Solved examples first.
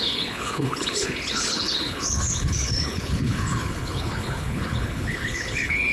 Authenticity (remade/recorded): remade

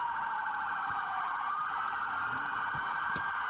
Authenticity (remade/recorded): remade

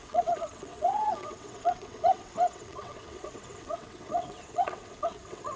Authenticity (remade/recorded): remade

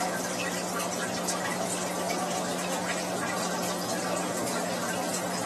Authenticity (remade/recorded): recorded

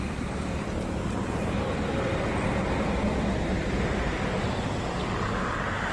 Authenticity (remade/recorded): remade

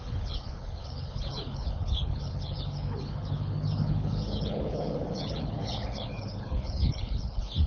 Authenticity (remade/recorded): remade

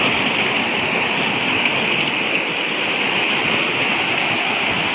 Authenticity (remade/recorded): recorded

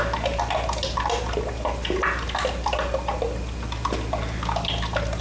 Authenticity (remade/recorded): recorded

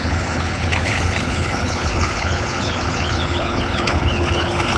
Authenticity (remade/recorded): remade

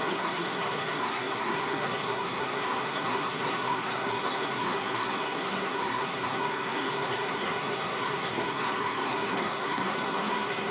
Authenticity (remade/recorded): remade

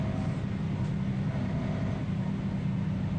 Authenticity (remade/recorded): recorded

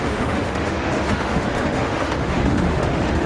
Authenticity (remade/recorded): remade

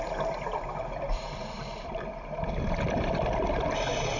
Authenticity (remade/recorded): remade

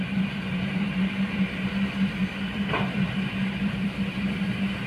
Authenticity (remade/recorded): remade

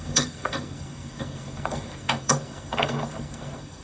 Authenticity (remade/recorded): remade